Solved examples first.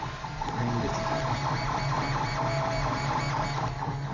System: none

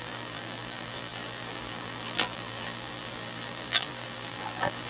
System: vocoder, BigVGAN v2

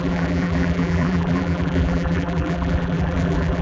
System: vocoder, BigVGAN v2